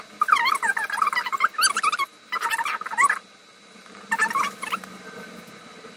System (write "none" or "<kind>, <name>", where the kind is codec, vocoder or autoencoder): none